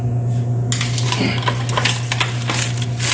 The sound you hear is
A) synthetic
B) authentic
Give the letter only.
B